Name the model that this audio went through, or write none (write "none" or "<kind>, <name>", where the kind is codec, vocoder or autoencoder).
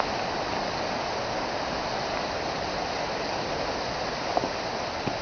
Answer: none